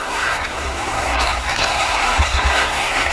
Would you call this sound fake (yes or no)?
yes